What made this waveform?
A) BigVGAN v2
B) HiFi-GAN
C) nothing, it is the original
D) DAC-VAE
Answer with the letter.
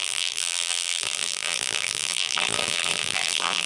A